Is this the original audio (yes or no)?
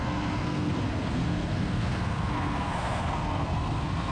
no